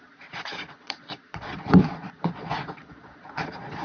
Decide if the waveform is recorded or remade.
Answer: remade